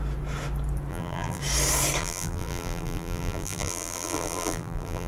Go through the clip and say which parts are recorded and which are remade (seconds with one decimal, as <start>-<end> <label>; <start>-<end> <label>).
0.0-0.9 recorded; 0.9-1.4 remade; 1.4-2.0 recorded; 2.0-5.1 remade